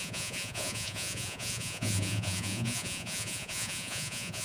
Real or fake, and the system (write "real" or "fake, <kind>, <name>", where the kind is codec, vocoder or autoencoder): fake, vocoder, Vocos